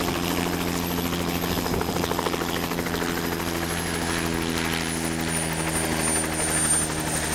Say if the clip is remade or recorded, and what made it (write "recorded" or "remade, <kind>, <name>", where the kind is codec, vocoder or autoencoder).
recorded